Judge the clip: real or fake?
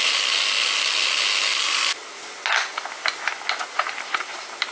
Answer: real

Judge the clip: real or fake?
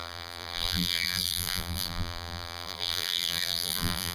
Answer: fake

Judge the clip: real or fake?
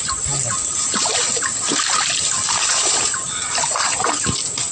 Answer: real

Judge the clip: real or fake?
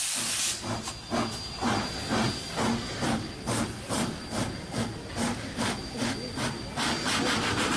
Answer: real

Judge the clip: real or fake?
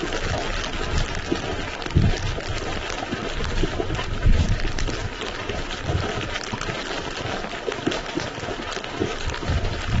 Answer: real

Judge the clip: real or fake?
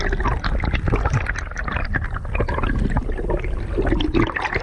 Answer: real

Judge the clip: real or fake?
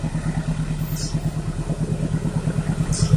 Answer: real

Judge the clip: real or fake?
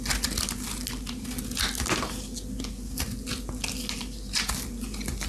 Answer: real